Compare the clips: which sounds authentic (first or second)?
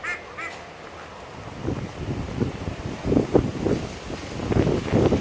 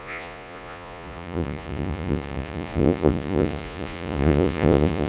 first